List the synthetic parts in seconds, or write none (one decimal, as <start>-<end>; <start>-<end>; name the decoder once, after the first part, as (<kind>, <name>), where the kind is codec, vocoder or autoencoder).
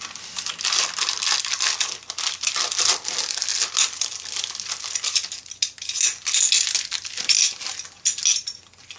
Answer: none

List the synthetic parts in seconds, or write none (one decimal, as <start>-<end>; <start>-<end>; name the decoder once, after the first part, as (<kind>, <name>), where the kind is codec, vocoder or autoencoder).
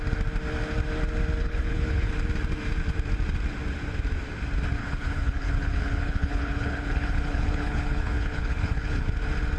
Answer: 1.4-2.1 (codec, HILCodec); 4.8-9.1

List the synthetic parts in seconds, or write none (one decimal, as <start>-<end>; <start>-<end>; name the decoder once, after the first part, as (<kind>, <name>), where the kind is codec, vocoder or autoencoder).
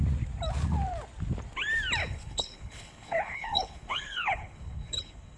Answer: 2.0-5.4 (codec, HILCodec)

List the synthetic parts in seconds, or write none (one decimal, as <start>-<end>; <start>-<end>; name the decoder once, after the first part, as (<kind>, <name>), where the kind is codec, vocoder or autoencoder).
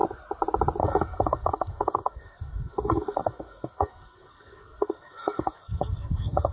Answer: 0.8-6.5 (codec, SNAC)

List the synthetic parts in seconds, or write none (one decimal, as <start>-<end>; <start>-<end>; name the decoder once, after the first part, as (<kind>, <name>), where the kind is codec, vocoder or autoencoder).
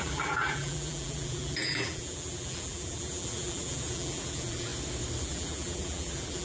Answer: 0.0-4.7 (vocoder, BigVGAN v2); 5.2-6.4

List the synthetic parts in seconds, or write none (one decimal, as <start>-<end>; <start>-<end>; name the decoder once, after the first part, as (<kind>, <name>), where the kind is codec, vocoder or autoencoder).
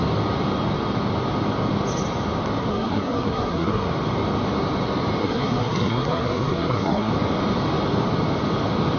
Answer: 2.6-3.9 (codec, SNAC); 5.2-7.1